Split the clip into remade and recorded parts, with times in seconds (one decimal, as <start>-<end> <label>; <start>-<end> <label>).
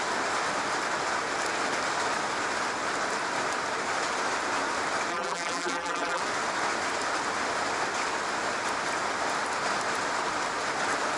0.0-5.1 recorded; 5.1-6.2 remade; 6.2-11.2 recorded